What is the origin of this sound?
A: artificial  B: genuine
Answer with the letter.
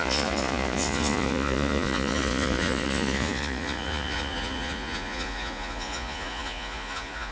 A